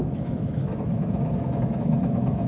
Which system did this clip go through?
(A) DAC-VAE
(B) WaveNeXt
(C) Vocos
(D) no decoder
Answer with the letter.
A